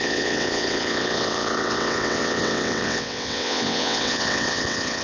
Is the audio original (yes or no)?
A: no